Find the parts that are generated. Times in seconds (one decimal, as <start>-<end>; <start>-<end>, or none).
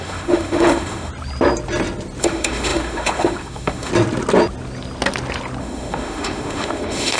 0.0-1.1; 2.2-3.9; 5.6-7.2